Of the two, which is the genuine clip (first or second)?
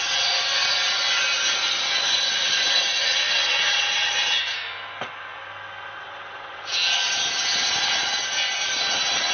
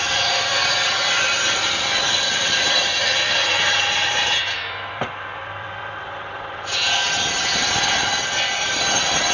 first